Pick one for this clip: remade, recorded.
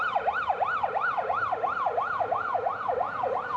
recorded